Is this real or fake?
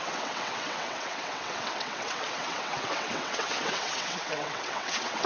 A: fake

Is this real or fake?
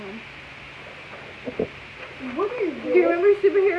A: real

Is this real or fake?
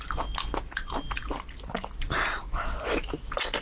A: real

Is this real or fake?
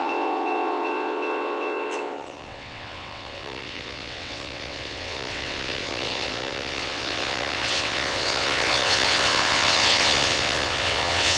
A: fake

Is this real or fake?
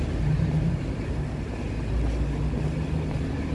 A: real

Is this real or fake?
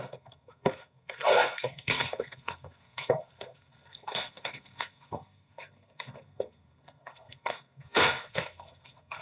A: fake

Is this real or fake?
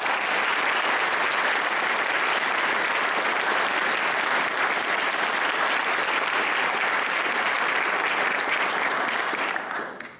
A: real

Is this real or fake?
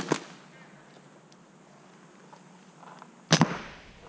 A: real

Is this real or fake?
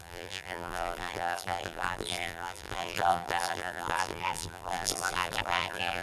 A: fake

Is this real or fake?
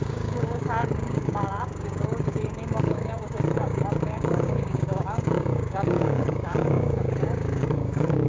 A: fake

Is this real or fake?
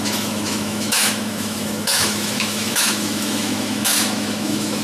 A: fake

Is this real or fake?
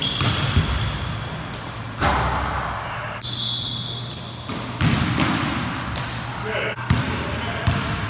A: real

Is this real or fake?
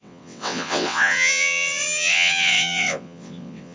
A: fake